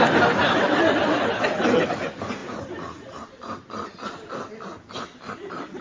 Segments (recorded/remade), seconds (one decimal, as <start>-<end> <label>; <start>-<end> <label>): 0.0-0.4 recorded; 0.4-1.4 remade; 1.4-2.4 recorded; 2.4-5.8 remade